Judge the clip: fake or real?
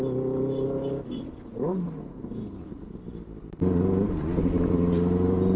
real